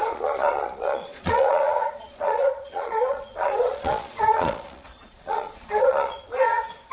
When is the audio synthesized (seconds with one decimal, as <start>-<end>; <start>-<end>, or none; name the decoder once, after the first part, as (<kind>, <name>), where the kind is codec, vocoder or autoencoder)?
0.0-6.9 (vocoder, Vocos)